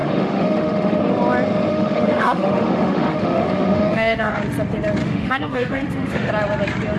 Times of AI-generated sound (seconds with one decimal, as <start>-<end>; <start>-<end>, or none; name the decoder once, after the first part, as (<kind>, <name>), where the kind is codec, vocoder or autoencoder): 0.0-1.0 (autoencoder, DAC-VAE); 1.7-4.4; 5.0-6.3